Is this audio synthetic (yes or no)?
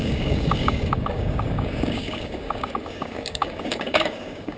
yes